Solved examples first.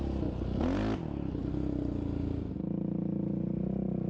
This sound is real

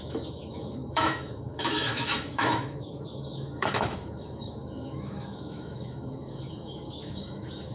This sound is fake